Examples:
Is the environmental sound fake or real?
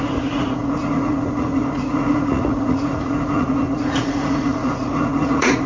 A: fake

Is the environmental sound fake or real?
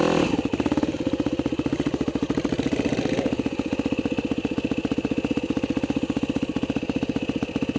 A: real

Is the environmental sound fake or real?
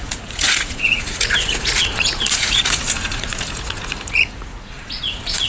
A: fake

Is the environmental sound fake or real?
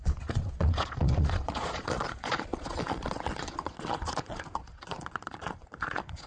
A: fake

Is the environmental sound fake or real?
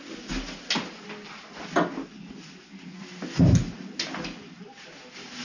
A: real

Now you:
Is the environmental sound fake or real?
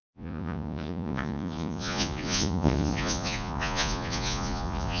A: fake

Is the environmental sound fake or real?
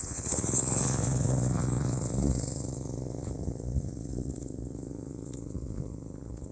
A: fake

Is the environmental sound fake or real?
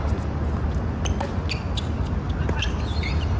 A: real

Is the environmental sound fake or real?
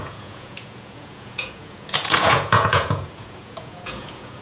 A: fake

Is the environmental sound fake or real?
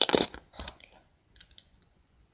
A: fake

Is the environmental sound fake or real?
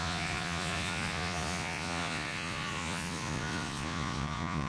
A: fake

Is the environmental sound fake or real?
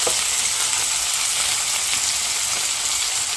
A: real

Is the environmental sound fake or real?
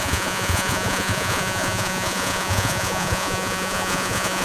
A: fake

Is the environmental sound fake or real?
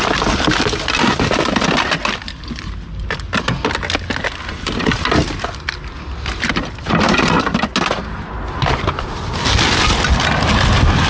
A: real